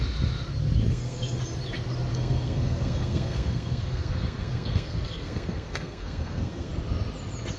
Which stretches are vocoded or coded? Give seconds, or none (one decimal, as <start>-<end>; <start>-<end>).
0.9-1.4; 2.1-6.7